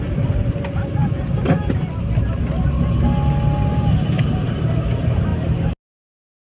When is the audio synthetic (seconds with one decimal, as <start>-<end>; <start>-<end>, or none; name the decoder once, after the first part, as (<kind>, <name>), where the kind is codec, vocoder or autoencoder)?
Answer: none